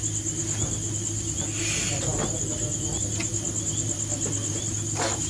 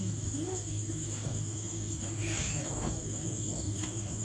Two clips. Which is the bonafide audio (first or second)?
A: first